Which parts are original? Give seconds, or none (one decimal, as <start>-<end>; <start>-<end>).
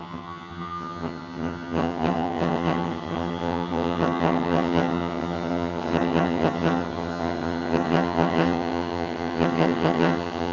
none